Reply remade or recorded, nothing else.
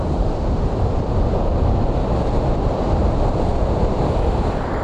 remade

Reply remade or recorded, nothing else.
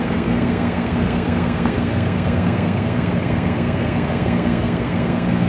remade